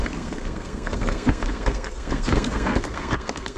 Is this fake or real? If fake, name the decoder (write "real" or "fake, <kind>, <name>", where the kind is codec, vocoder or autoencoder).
fake, codec, SNAC